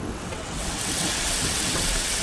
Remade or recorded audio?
remade